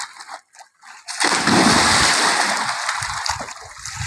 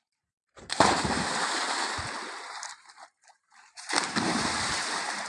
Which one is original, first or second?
first